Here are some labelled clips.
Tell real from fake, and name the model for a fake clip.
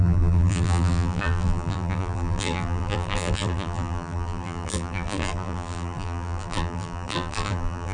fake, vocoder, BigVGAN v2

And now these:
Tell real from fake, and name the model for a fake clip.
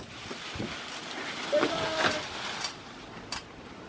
real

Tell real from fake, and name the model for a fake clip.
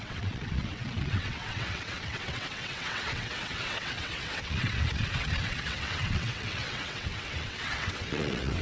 fake, vocoder, WaveNeXt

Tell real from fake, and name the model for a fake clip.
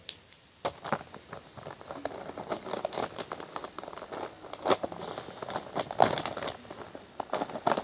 real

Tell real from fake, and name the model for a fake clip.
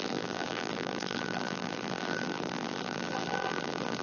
fake, vocoder, BigVGAN v2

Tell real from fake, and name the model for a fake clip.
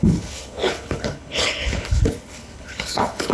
fake, codec, HILCodec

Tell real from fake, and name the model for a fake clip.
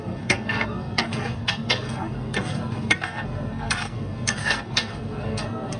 fake, codec, SNAC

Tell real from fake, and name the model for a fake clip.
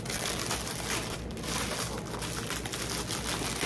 real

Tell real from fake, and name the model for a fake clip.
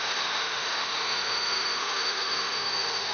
fake, autoencoder, DAC-VAE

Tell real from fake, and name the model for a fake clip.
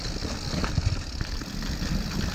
real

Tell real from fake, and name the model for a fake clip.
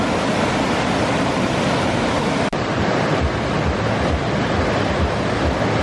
real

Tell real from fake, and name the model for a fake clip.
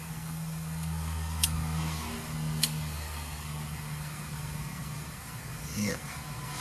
fake, codec, SNAC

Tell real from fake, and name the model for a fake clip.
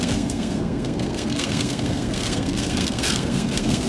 fake, codec, SNAC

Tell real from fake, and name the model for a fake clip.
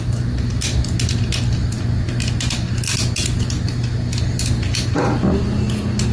real